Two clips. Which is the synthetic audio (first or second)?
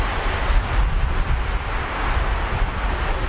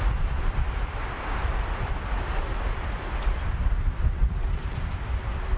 second